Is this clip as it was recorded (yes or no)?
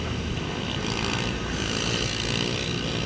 yes